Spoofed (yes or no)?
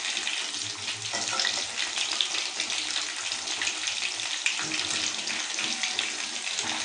no